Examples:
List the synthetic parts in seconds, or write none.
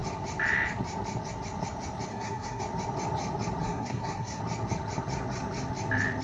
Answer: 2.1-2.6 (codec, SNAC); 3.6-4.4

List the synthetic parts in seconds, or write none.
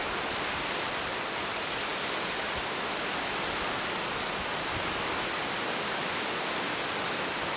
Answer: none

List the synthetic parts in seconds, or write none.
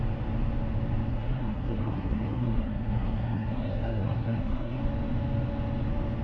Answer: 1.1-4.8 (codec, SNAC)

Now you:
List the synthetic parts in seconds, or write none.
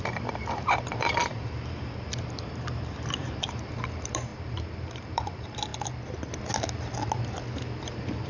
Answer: 0.0-5.7 (vocoder, BigVGAN v2); 7.9-8.3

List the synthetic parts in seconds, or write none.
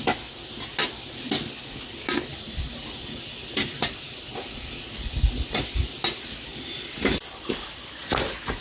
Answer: 2.3-5.8 (vocoder, BigVGAN v2); 6.5-7.4